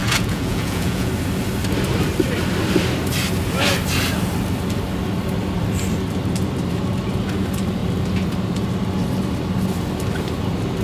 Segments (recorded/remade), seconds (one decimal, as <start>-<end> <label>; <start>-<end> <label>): 0.0-1.1 remade; 1.1-10.8 recorded